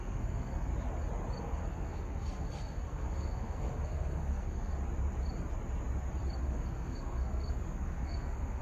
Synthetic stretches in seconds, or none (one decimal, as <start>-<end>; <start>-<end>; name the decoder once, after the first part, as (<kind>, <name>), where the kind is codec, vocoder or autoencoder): 0.0-0.7 (codec, SNAC); 1.4-4.7; 6.4-8.6